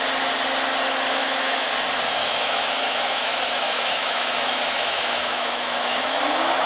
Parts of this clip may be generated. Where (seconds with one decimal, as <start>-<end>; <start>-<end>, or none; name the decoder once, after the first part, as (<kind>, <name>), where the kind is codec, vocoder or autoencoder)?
1.2-1.7 (autoencoder, DAC-VAE); 2.2-6.2